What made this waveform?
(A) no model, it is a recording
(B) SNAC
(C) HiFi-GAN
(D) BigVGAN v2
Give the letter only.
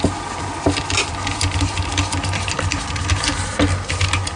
A